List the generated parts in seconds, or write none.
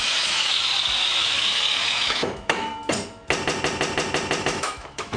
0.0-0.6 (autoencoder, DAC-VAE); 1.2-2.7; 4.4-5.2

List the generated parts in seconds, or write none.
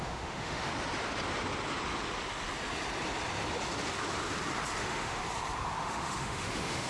0.0-0.7 (autoencoder, DAC-VAE); 4.8-5.2; 5.8-6.9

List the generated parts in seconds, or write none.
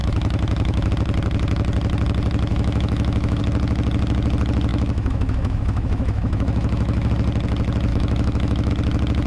0.0-0.9 (autoencoder, DAC-VAE); 2.5-3.4; 4.7-7.1; 7.9-8.7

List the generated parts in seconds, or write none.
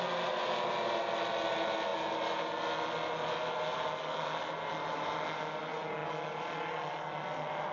none